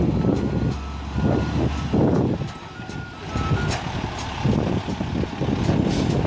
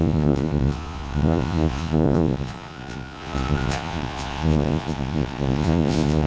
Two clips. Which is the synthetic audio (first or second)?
second